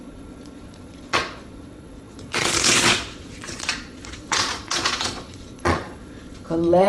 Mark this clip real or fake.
fake